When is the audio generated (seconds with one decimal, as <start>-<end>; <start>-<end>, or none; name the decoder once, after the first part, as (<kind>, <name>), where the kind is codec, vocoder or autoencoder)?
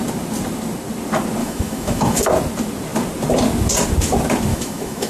1.4-2.2 (autoencoder, DAC-VAE); 4.5-5.1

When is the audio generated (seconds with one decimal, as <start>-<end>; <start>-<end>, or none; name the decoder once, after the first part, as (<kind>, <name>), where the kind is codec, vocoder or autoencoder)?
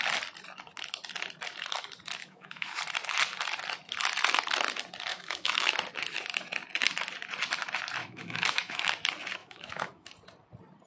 2.2-2.8 (autoencoder, DAC-VAE); 5.1-5.7; 8.0-8.9; 9.4-10.1